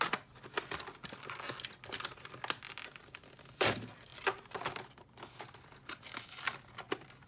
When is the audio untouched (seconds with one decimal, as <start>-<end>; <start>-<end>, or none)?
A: 0.0-7.3